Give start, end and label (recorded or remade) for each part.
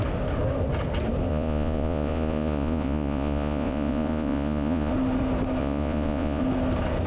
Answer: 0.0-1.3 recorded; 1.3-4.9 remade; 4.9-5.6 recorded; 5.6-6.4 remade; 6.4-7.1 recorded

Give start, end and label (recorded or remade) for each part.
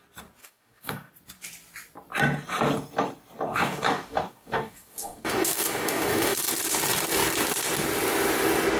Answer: 0.0-0.4 recorded; 0.4-1.1 remade; 1.1-3.5 recorded; 3.5-6.5 remade; 6.5-8.8 recorded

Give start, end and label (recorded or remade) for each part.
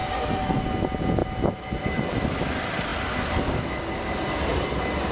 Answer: 0.0-0.6 remade; 0.6-5.1 recorded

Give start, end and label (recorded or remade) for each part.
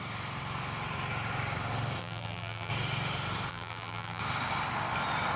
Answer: 0.0-2.0 recorded; 2.0-2.7 remade; 2.7-3.5 recorded; 3.5-4.2 remade; 4.2-5.4 recorded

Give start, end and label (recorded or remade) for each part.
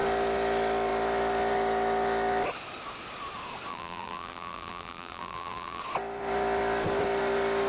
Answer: 0.0-3.7 recorded; 3.7-5.8 remade; 5.8-7.7 recorded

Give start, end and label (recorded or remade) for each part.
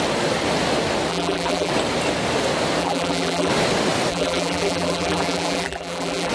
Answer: 0.0-1.1 recorded; 1.1-1.7 remade; 1.7-2.8 recorded; 2.8-3.5 remade; 3.5-4.1 recorded; 4.1-6.3 remade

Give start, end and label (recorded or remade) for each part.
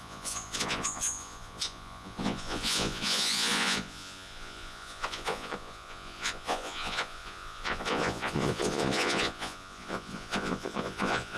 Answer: 0.0-11.4 remade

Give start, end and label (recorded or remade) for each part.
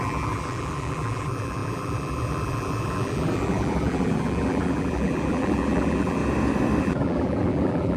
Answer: 0.0-6.2 remade; 6.2-6.8 recorded; 6.8-8.0 remade